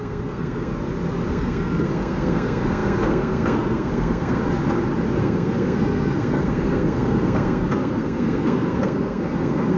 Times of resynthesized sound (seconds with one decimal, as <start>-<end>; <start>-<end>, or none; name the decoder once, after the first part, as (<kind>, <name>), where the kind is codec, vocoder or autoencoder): 0.0-0.7 (codec, SNAC); 1.3-4.4; 5.2-9.8